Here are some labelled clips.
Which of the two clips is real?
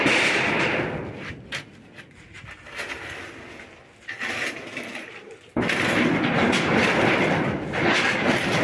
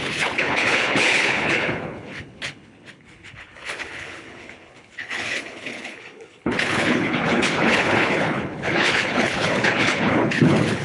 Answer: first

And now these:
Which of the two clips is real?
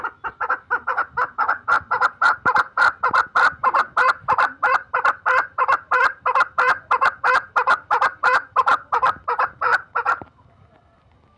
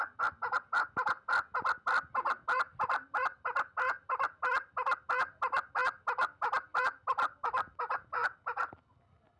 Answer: second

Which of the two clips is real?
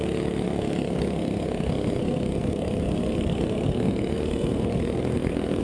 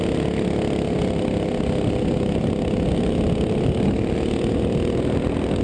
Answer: second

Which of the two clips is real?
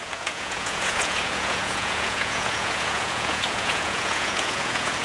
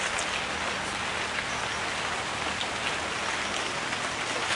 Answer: second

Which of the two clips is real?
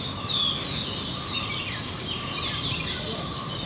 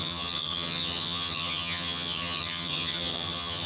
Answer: first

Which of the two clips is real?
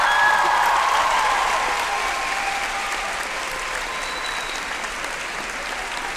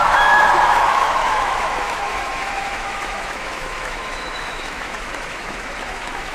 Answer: first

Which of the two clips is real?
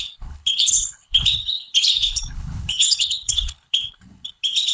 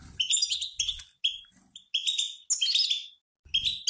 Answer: second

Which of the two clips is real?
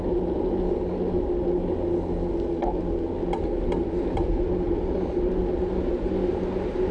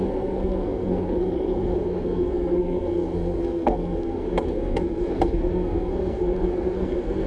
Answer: first